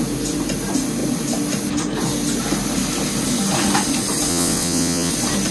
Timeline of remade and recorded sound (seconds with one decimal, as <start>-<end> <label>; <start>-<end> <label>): 0.0-4.3 recorded; 4.3-5.1 remade; 5.1-5.5 recorded